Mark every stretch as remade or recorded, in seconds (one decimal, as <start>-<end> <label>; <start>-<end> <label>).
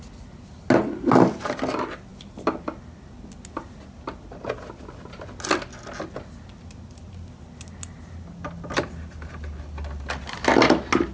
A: 0.0-11.1 recorded